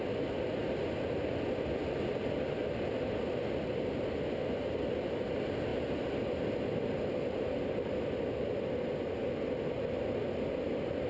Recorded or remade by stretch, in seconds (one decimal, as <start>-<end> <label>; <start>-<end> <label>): 0.0-11.1 recorded